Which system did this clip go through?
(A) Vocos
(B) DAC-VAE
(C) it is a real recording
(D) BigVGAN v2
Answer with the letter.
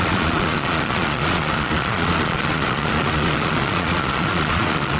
A